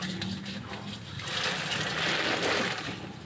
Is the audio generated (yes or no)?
no